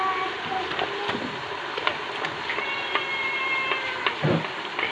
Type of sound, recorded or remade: recorded